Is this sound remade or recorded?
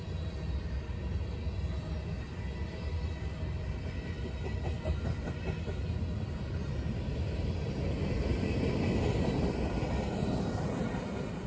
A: recorded